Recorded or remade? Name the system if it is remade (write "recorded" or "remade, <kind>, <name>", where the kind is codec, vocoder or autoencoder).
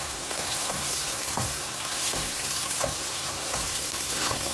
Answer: remade, codec, SNAC